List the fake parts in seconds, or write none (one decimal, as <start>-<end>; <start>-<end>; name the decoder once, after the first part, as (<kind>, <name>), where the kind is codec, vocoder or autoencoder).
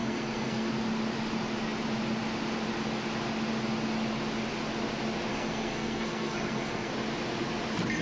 0.0-0.7 (codec, SNAC); 5.3-6.9